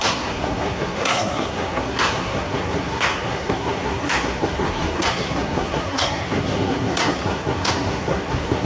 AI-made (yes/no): yes